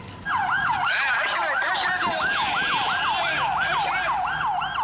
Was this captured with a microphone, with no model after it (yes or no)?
yes